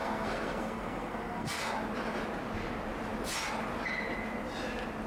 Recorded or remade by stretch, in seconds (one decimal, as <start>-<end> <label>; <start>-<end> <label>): 0.0-1.6 remade; 1.6-5.1 recorded